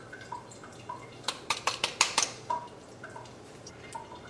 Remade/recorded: remade